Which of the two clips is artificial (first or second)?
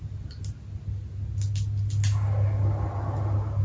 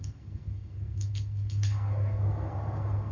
second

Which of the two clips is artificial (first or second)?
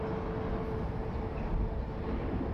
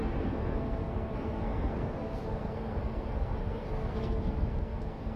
second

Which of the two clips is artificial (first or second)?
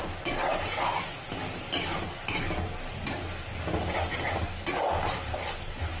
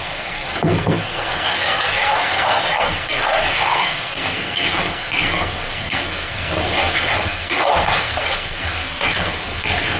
second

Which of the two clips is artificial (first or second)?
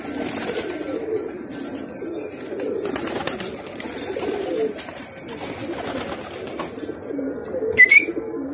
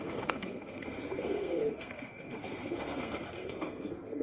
second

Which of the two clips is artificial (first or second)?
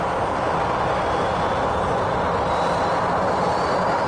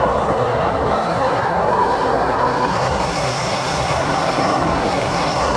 second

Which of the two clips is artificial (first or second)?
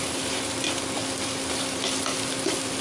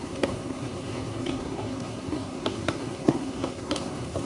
second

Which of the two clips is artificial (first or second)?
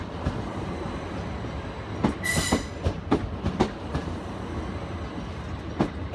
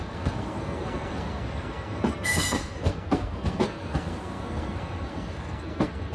second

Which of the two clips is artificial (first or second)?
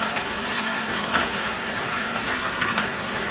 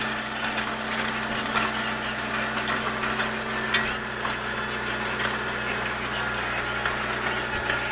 first